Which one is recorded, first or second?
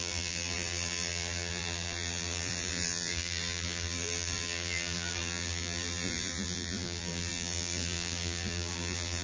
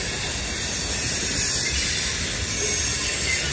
second